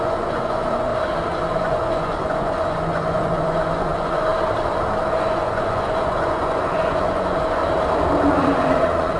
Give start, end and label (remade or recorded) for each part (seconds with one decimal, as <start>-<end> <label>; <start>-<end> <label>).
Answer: 0.0-0.9 remade; 0.9-1.5 recorded; 1.5-4.3 remade; 4.3-5.1 recorded; 5.1-7.6 remade; 7.6-8.3 recorded; 8.3-9.2 remade